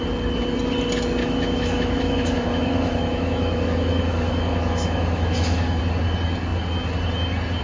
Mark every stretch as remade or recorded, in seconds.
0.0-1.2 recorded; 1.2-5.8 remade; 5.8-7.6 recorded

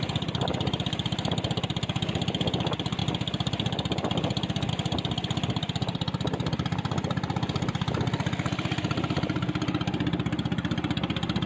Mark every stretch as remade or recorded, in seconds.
0.0-11.5 recorded

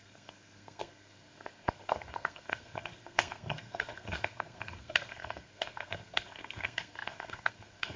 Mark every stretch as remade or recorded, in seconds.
0.0-8.0 remade

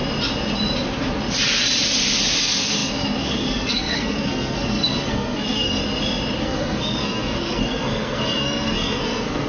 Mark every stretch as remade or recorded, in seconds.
0.0-2.4 recorded; 2.4-5.8 remade; 5.8-6.4 recorded; 6.4-9.5 remade

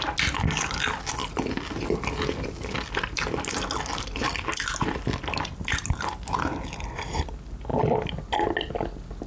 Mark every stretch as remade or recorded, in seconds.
0.0-9.3 recorded

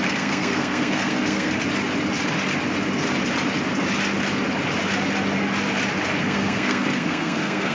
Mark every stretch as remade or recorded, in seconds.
0.0-1.6 remade; 1.6-6.2 recorded; 6.2-7.7 remade

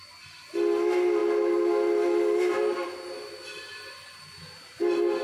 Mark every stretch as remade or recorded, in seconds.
0.0-5.2 recorded